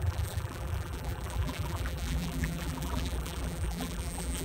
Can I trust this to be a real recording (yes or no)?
no